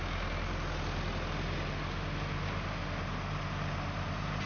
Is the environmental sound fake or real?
real